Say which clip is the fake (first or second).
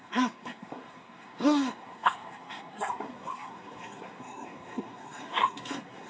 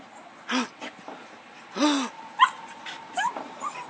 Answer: first